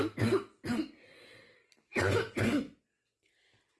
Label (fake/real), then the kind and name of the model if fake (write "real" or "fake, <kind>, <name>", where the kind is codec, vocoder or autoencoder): real